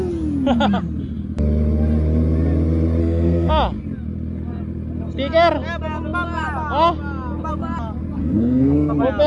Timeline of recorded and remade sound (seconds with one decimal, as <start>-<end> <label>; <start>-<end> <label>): 0.0-3.0 recorded; 3.0-3.5 remade; 3.5-8.2 recorded; 8.2-8.9 remade; 8.9-9.3 recorded